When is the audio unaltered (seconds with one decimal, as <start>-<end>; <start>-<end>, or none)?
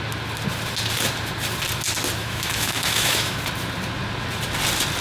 0.0-2.2; 3.4-5.0